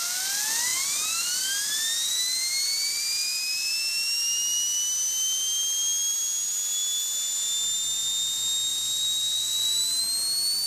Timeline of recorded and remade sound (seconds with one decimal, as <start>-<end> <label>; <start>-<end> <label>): 0.0-0.7 recorded; 0.7-3.7 remade; 3.7-8.7 recorded; 8.7-10.0 remade; 10.0-10.7 recorded

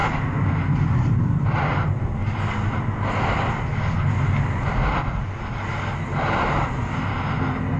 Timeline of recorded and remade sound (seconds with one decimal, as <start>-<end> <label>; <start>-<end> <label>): 0.0-7.8 recorded

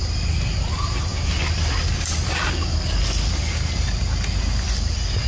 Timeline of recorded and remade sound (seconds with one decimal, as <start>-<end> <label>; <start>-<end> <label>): 0.0-5.3 recorded